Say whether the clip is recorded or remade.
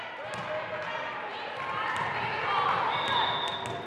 recorded